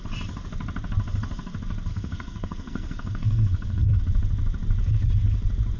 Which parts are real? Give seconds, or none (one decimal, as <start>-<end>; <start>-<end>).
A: 0.0-1.9; 4.0-5.8